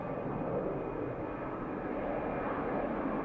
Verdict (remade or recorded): recorded